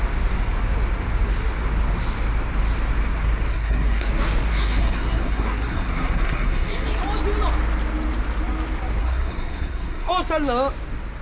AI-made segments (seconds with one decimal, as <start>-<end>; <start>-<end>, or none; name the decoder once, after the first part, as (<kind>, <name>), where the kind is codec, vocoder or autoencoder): 3.5-4.1 (codec, SNAC); 4.5-7.0; 9.0-10.1